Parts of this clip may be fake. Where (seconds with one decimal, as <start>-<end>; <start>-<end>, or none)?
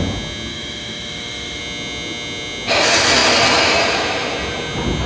0.5-1.6